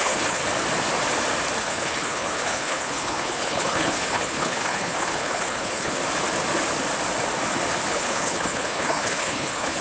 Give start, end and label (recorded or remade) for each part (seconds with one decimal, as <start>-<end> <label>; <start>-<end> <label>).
0.0-0.4 remade; 0.4-1.6 recorded; 1.6-6.0 remade; 6.0-7.9 recorded; 7.9-9.8 remade